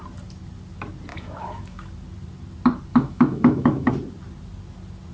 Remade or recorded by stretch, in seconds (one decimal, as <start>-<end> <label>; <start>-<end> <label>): 0.0-1.1 recorded; 1.1-1.9 remade; 1.9-2.9 recorded; 2.9-3.9 remade; 3.9-5.1 recorded